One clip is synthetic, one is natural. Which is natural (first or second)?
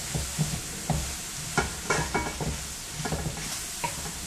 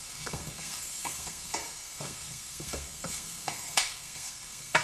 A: first